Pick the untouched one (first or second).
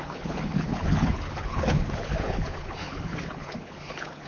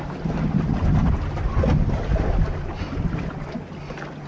second